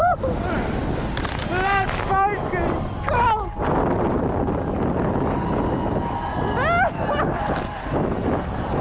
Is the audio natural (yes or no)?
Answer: yes